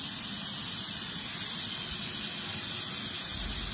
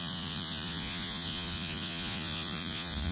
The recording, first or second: first